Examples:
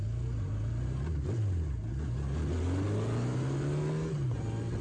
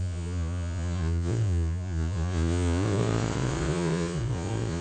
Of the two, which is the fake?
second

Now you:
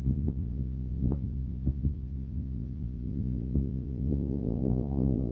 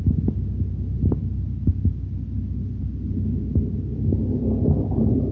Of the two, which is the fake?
first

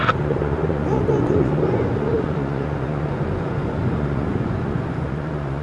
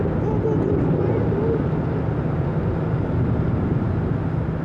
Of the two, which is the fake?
first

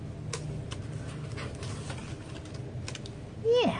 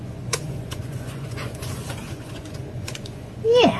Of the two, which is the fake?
second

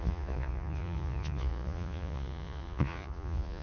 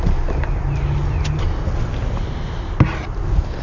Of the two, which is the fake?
first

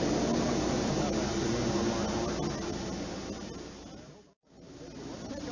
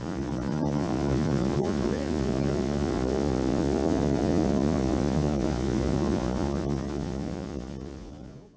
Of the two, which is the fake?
second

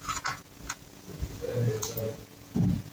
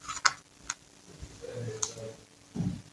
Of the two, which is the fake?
first